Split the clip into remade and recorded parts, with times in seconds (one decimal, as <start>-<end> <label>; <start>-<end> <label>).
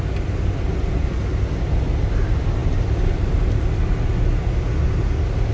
0.0-2.6 recorded; 2.6-3.3 remade; 3.3-5.5 recorded